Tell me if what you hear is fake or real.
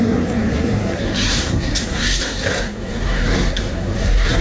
fake